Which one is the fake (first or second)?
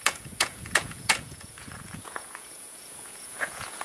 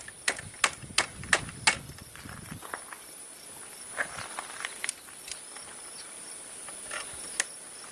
first